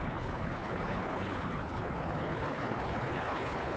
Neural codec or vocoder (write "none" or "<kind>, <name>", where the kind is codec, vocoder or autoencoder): codec, HILCodec